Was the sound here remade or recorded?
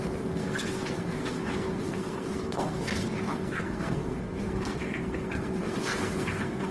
remade